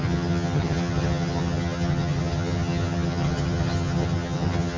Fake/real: fake